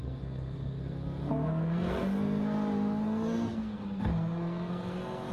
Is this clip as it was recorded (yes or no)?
no